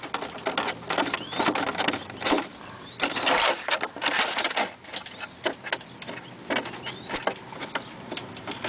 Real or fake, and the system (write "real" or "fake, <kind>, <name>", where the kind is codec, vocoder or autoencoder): real